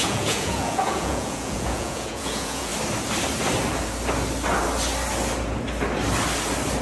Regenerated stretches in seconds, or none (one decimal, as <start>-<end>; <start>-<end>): 0.0-2.7